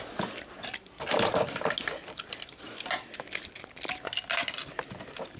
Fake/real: real